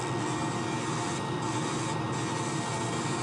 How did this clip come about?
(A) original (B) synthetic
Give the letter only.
A